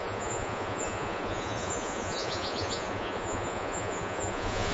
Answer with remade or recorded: remade